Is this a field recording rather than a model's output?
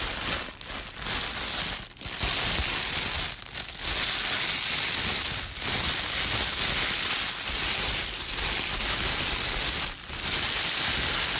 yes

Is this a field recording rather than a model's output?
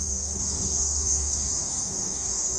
no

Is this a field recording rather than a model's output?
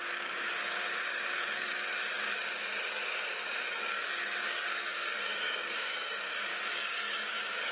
no